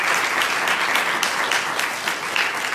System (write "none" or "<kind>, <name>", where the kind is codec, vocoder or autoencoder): none